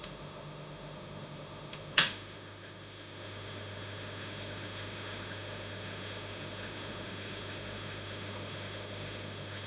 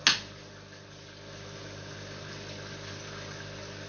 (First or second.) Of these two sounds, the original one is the second